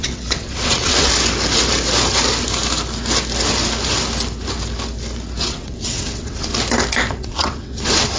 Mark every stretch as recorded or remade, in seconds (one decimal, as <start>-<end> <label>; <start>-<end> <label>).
0.0-1.1 remade; 1.1-5.4 recorded; 5.4-6.5 remade; 6.5-7.1 recorded; 7.1-8.2 remade